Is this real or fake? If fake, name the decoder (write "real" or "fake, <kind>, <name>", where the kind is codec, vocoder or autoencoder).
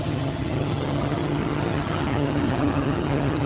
fake, vocoder, HiFi-GAN